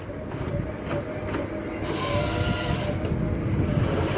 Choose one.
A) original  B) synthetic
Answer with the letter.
A